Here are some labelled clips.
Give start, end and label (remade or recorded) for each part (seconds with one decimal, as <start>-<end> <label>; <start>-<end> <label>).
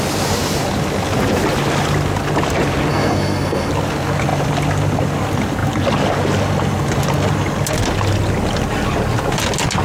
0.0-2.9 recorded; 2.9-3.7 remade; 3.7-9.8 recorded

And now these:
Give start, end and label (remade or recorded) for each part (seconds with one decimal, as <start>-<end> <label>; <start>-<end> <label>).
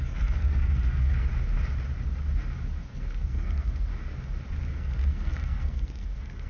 0.0-1.3 remade; 1.3-2.9 recorded; 2.9-3.9 remade; 3.9-4.6 recorded; 4.6-6.5 remade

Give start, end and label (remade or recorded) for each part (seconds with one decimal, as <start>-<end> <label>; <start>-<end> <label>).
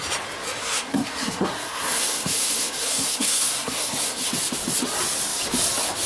0.0-0.6 recorded; 0.6-4.3 remade; 4.3-6.1 recorded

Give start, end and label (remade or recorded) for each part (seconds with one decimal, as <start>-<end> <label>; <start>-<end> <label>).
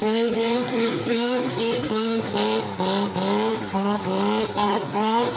0.0-2.3 remade; 2.3-3.5 recorded; 3.5-4.0 remade; 4.0-4.4 recorded; 4.4-5.4 remade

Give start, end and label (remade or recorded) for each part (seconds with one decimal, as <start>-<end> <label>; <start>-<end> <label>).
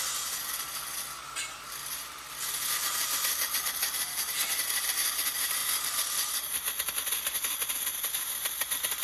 0.0-9.0 recorded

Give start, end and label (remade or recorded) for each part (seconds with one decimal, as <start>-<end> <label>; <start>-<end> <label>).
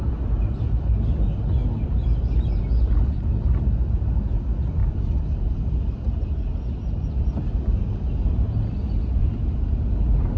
0.0-10.4 recorded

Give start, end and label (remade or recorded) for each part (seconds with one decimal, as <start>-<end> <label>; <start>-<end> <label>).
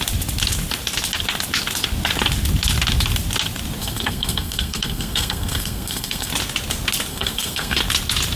0.0-3.8 recorded; 3.8-6.3 remade; 6.3-7.1 recorded; 7.1-7.8 remade; 7.8-8.4 recorded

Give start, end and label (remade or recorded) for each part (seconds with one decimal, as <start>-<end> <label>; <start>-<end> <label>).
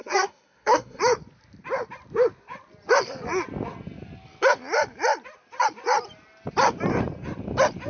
0.0-1.0 remade; 1.0-7.9 recorded